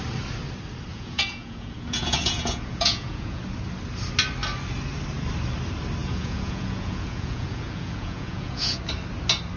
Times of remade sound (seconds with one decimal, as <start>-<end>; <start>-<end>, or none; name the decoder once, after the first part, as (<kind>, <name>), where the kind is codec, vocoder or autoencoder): 0.9-3.4 (vocoder, Vocos); 6.0-8.8